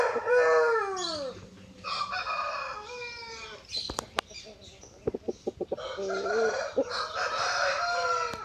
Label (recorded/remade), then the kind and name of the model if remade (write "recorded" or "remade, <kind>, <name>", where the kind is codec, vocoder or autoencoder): recorded